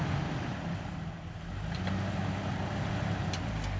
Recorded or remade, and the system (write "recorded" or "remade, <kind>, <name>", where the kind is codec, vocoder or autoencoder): recorded